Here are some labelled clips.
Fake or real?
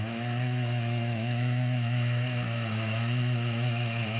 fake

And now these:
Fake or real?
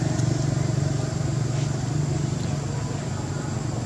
real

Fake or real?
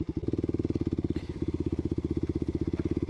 real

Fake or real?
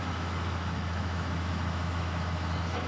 fake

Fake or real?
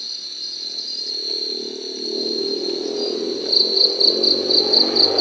real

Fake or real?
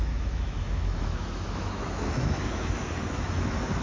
fake